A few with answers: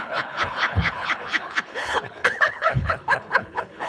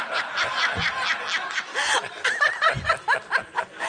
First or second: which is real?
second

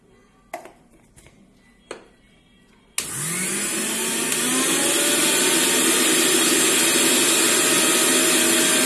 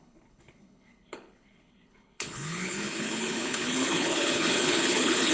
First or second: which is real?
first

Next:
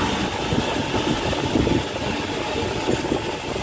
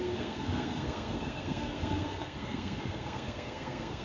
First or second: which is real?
first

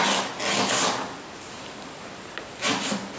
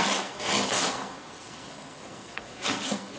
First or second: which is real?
first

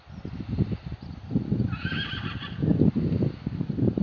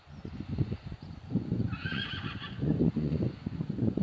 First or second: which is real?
first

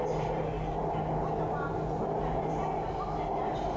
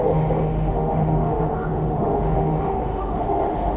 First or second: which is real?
first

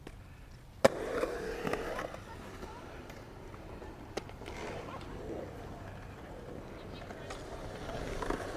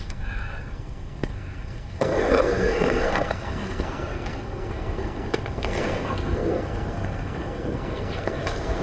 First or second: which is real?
first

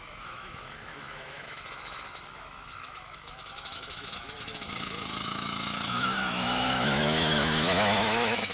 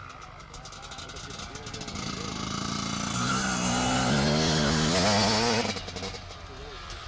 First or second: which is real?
second